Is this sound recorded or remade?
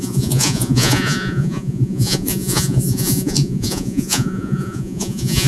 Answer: remade